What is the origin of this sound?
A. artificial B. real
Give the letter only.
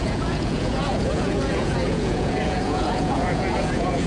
A